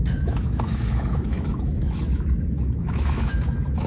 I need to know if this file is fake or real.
fake